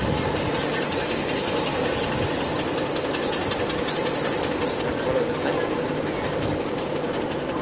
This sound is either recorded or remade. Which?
recorded